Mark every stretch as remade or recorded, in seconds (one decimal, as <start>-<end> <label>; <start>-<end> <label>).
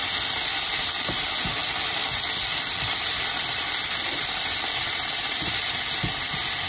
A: 0.0-1.6 recorded; 1.6-5.6 remade; 5.6-6.7 recorded